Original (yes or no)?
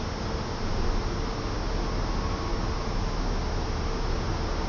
yes